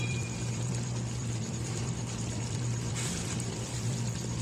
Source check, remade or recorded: remade